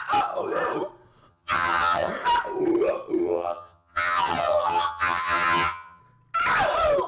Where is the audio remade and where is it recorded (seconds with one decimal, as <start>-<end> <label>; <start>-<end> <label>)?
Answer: 0.0-1.3 recorded; 1.3-2.1 remade; 2.1-3.2 recorded; 3.2-6.0 remade; 6.0-7.1 recorded